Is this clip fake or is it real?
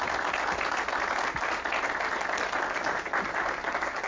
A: real